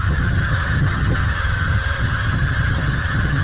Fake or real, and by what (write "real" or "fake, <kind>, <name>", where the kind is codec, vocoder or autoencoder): fake, vocoder, HiFi-GAN